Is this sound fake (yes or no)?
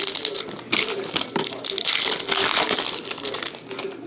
no